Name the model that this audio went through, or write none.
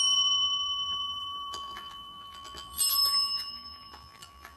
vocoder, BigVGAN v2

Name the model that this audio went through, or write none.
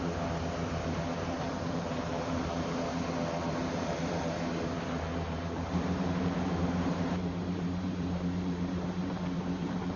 vocoder, BigVGAN v2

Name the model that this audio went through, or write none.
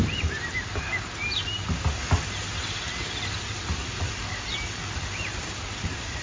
none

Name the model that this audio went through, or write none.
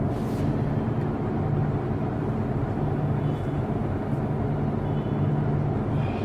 none